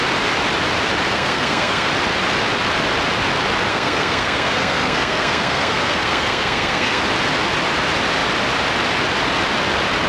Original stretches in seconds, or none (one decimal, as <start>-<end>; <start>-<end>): 0.0-1.1; 1.9-3.7; 7.0-10.1